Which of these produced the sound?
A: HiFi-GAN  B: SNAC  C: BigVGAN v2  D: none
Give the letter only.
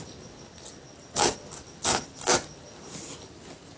D